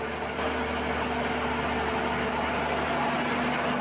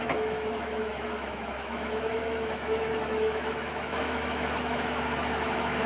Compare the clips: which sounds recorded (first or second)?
first